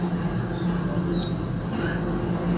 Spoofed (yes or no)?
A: no